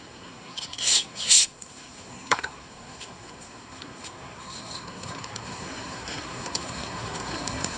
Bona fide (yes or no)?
no